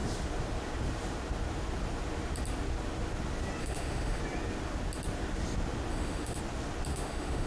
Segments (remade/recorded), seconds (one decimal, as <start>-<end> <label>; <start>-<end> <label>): 0.0-3.6 recorded; 3.6-4.2 remade; 4.2-5.9 recorded; 5.9-6.4 remade; 6.4-6.9 recorded; 6.9-7.5 remade

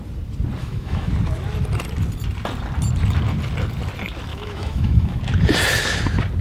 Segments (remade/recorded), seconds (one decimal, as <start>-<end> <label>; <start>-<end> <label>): 0.0-0.6 recorded; 0.6-1.1 remade; 1.1-4.3 recorded; 4.3-5.2 remade; 5.2-6.4 recorded